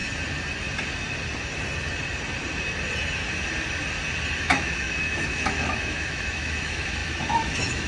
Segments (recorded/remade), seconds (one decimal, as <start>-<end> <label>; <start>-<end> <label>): 0.0-4.4 recorded; 4.4-7.9 remade